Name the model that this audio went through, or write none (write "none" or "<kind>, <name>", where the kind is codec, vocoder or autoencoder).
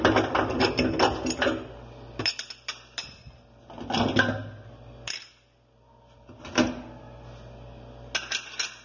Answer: none